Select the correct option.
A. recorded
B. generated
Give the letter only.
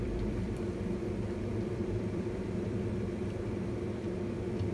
B